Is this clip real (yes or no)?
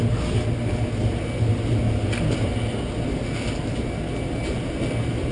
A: yes